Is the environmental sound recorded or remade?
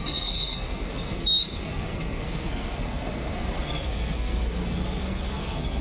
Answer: remade